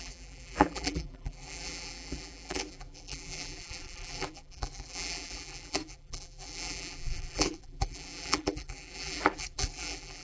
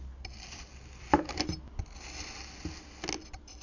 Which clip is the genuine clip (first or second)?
second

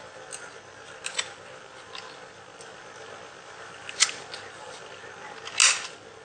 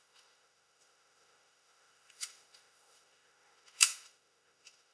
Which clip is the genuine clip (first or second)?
first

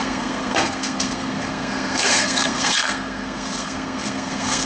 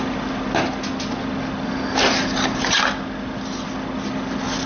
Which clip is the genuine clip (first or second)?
second